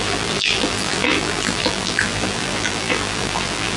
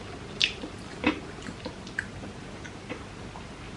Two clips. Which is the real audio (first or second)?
second